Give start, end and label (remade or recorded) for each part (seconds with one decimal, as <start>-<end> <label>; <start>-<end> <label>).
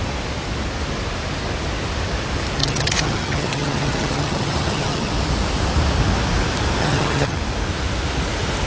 0.0-2.6 recorded; 2.6-5.1 remade; 5.1-6.8 recorded; 6.8-7.4 remade; 7.4-8.7 recorded